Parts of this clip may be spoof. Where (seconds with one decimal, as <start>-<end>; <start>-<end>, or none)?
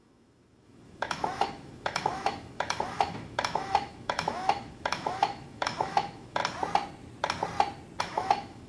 0.0-6.4; 8.0-8.7